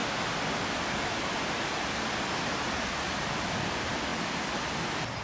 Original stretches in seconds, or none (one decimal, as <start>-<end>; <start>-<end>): 0.0-5.2